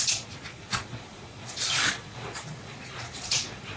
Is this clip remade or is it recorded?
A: remade